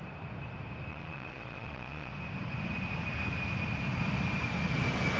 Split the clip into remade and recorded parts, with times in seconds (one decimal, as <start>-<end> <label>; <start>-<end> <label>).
0.0-0.9 recorded; 0.9-2.1 remade; 2.1-5.2 recorded

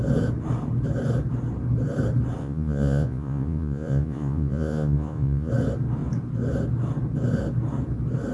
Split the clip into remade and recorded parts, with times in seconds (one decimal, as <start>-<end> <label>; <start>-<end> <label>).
0.0-2.4 recorded; 2.4-5.5 remade; 5.5-8.3 recorded

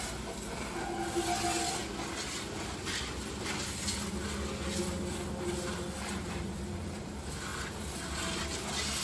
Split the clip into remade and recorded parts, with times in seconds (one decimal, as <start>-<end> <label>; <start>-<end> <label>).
0.0-9.0 recorded

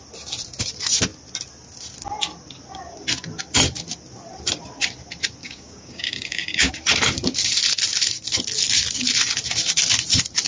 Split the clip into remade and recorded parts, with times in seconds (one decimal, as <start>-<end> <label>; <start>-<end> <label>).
0.0-5.4 recorded; 5.4-6.7 remade; 6.7-10.5 recorded

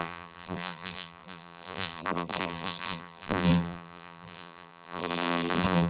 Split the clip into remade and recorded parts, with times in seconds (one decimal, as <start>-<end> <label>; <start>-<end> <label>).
0.0-5.9 remade

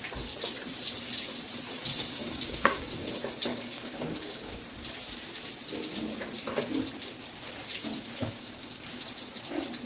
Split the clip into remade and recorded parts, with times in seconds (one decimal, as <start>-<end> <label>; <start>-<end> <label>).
0.0-2.2 recorded; 2.2-3.1 remade; 3.1-3.5 recorded; 3.5-4.6 remade; 4.6-8.2 recorded; 8.2-9.0 remade; 9.0-9.9 recorded

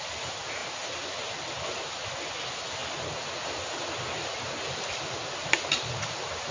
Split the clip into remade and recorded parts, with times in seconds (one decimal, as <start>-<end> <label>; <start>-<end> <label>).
0.0-6.5 recorded